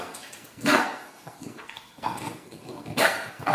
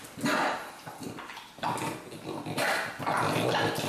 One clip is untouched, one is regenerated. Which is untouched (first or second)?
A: second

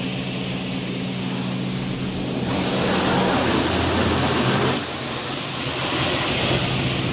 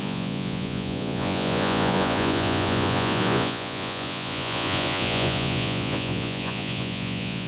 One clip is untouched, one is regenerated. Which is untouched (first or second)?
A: first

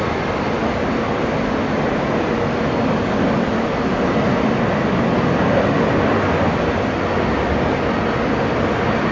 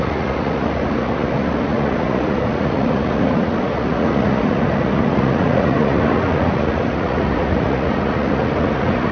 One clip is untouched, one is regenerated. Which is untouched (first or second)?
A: first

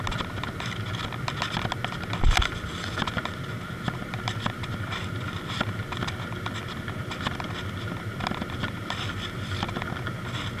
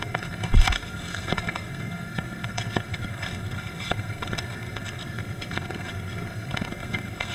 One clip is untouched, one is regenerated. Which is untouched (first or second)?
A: first